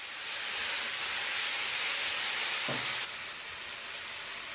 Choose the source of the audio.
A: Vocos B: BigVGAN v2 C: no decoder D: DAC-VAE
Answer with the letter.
C